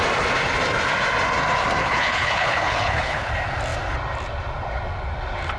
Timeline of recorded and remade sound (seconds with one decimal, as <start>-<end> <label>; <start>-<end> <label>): 0.0-1.8 recorded; 1.8-3.3 remade; 3.3-5.6 recorded